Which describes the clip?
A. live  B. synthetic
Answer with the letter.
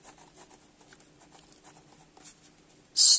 A